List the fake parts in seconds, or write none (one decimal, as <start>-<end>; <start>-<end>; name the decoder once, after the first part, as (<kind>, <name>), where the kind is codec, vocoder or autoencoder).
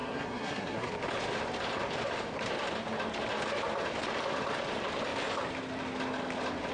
0.0-0.9 (codec, SNAC)